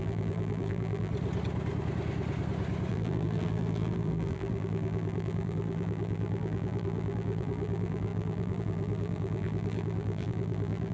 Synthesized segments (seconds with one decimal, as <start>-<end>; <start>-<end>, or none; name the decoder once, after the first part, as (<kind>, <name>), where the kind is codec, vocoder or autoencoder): 0.0-1.1 (vocoder, BigVGAN v2); 2.9-10.9